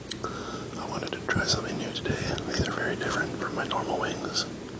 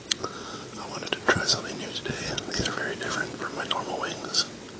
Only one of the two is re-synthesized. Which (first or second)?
second